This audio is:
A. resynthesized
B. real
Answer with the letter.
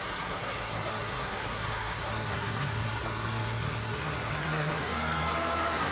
A